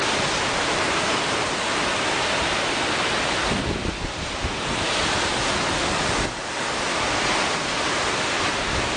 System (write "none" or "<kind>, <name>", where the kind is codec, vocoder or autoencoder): none